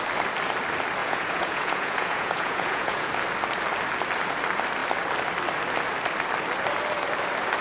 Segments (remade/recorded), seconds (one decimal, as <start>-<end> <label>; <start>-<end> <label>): 0.0-1.0 recorded; 1.0-3.1 remade; 3.1-7.6 recorded